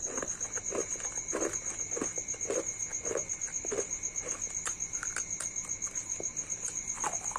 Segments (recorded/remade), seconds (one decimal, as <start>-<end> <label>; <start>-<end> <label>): 0.0-7.4 recorded